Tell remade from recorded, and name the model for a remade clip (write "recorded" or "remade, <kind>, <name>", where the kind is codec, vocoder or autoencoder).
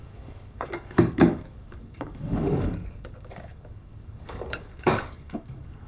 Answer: remade, codec, DAC